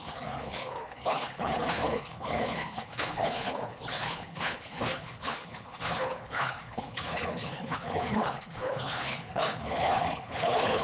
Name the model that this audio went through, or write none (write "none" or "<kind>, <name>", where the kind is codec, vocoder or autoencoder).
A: codec, HILCodec